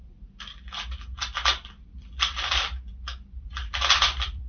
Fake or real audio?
fake